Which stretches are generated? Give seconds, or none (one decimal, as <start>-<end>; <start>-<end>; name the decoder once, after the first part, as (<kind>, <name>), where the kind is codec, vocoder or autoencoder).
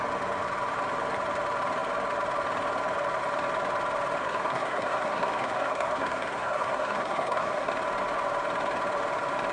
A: 4.2-7.7 (codec, SNAC)